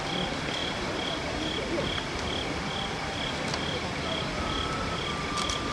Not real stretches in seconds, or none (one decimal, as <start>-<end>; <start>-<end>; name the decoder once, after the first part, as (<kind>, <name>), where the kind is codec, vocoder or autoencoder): none